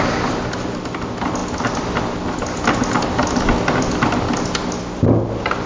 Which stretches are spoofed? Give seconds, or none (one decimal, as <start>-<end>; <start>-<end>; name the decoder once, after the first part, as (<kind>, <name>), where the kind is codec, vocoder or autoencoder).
none